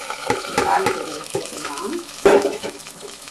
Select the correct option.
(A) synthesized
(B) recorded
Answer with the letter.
A